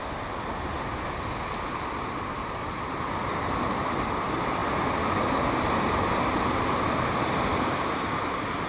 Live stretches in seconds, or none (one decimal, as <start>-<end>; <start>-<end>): 0.0-8.7